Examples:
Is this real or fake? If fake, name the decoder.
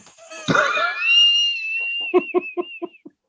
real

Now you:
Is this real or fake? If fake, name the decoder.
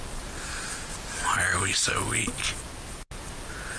real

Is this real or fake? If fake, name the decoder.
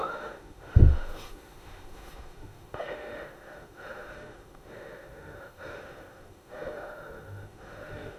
fake, autoencoder, DAC-VAE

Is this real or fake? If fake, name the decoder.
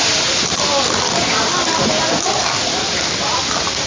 real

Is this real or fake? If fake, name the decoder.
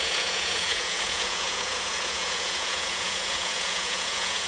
fake, vocoder, Vocos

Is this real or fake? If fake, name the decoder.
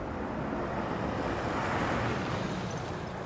real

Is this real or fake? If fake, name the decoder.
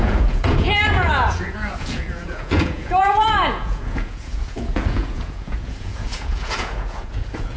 fake, vocoder, Vocos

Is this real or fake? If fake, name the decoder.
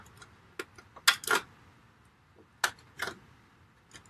real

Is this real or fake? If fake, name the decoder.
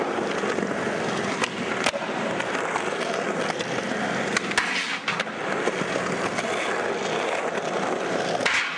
real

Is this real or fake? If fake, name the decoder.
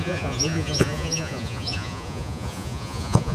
fake, vocoder, Vocos